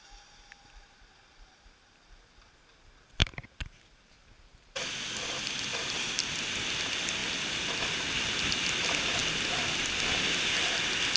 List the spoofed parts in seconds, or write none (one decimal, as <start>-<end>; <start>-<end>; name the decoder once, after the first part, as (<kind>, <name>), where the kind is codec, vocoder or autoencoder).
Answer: 3.2-4.3 (vocoder, BigVGAN v2)